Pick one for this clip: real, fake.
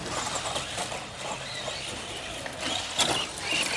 real